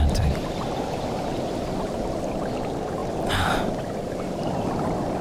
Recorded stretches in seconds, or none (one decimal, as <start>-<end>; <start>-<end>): 0.0-3.0; 3.7-5.2